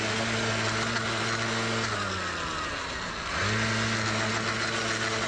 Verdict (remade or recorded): recorded